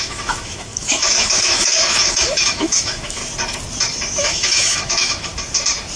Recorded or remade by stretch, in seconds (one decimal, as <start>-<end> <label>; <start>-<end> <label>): 0.0-3.2 remade; 3.2-4.2 recorded; 4.2-5.3 remade; 5.3-6.0 recorded